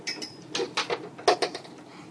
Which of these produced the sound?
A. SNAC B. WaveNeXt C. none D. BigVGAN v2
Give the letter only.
C